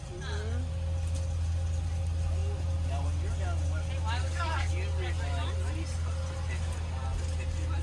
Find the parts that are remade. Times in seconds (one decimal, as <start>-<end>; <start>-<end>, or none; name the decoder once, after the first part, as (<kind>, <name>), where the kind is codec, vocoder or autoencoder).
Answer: 4.2-4.7 (codec, DAC)